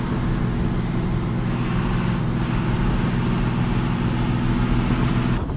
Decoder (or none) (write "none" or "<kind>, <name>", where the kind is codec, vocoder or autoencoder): none